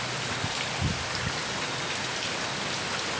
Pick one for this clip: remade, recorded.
recorded